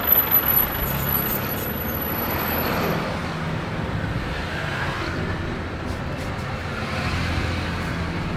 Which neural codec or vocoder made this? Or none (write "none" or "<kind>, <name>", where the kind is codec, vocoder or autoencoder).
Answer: none